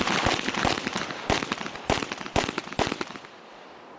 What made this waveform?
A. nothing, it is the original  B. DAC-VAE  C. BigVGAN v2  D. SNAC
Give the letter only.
C